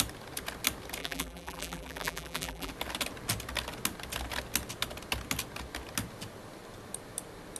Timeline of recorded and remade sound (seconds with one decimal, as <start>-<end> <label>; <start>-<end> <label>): 0.0-1.0 recorded; 1.0-2.7 remade; 2.7-7.6 recorded